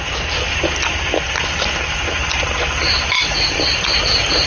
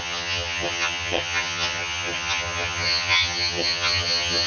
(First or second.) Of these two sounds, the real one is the first